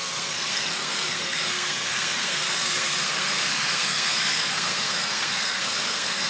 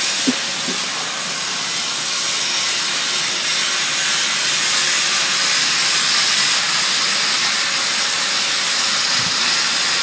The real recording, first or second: second